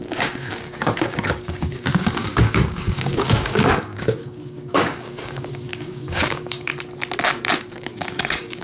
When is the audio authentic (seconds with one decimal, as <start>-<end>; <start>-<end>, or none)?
6.7-7.6